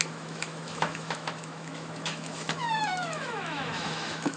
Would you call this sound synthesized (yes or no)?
yes